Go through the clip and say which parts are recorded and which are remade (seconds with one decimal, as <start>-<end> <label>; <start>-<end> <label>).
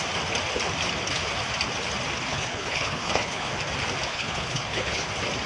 0.0-2.3 recorded; 2.3-3.5 remade; 3.5-4.1 recorded; 4.1-5.1 remade; 5.1-5.5 recorded